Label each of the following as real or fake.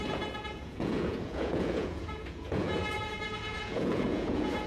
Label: fake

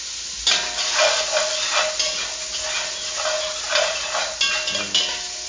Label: real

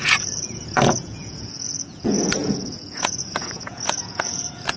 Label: fake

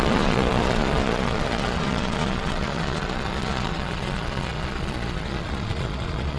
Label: fake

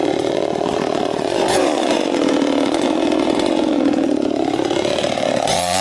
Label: fake